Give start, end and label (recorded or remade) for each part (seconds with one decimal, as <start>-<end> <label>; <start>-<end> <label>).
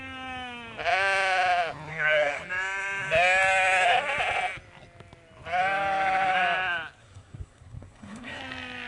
0.0-1.9 recorded; 1.9-2.4 remade; 2.4-7.0 recorded; 7.0-8.4 remade; 8.4-8.9 recorded